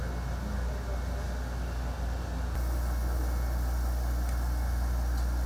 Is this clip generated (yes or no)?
no